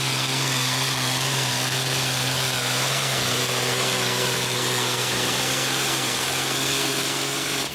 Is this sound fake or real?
fake